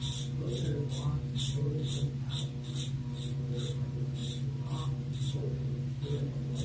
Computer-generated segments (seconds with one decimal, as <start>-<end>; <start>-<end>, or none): none